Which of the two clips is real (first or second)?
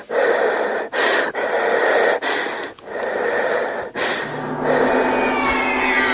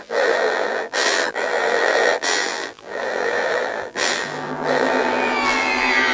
first